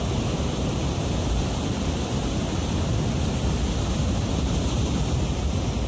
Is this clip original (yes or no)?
yes